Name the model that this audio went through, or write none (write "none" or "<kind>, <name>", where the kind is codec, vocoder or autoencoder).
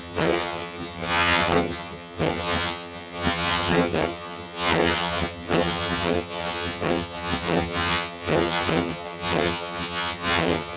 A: vocoder, HiFi-GAN